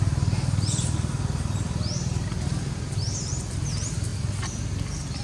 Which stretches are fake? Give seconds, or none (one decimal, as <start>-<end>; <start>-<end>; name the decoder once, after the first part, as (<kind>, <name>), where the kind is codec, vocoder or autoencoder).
none